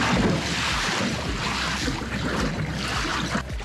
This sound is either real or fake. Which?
real